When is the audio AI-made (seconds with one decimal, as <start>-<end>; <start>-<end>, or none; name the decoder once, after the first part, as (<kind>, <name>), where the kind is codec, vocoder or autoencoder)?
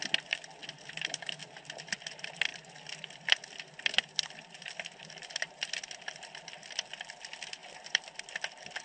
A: 2.5-6.7 (vocoder, BigVGAN v2); 7.6-8.8